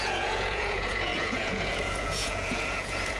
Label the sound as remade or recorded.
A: remade